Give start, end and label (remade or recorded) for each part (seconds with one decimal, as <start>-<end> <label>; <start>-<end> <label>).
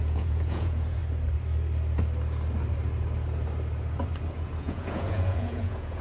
0.0-1.0 remade; 1.0-4.6 recorded; 4.6-6.0 remade